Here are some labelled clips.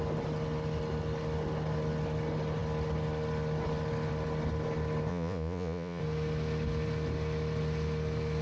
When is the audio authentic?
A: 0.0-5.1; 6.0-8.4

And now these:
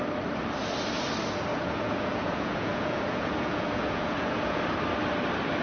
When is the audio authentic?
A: 0.0-1.5; 4.6-5.6

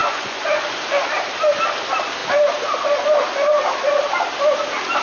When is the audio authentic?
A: 0.8-5.0

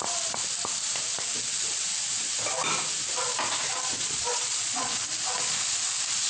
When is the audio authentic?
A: 0.0-3.9; 5.1-6.3

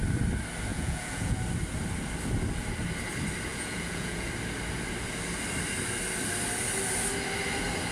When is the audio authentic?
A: 0.0-0.7; 1.4-3.5; 4.3-7.9

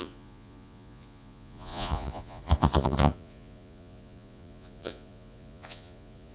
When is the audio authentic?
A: none

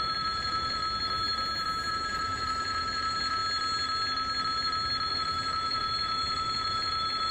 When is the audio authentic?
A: 0.8-1.9; 3.4-5.1